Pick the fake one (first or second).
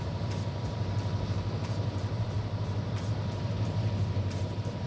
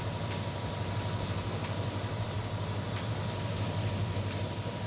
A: first